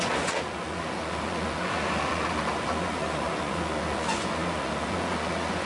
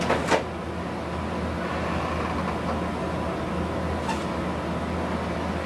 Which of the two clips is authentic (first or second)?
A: second